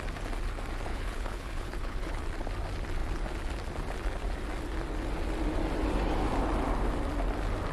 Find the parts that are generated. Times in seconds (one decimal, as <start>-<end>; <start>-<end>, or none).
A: 0.9-2.2